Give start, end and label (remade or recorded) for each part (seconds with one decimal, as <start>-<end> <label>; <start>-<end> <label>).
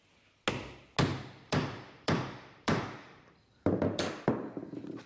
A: 0.0-1.1 recorded; 1.1-4.2 remade; 4.2-5.1 recorded